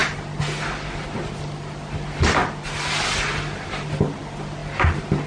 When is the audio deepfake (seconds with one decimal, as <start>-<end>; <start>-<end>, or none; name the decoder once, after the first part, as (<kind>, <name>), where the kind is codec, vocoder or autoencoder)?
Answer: none